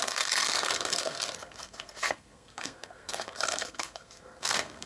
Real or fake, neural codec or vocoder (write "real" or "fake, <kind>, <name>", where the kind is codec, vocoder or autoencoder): fake, codec, SNAC